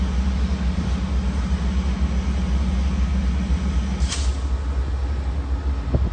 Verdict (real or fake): real